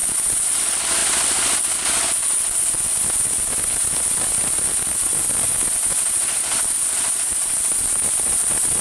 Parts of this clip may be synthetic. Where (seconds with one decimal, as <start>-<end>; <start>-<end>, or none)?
none